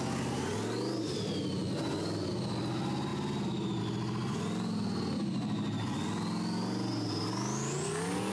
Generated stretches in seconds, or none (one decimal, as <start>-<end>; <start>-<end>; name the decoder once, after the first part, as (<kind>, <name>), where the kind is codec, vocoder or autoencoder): none